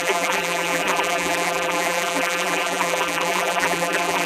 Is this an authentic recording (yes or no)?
no